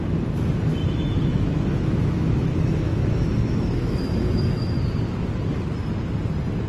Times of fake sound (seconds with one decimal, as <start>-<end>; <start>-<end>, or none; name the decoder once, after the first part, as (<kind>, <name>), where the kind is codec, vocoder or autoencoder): 0.8-4.8 (autoencoder, DAC-VAE)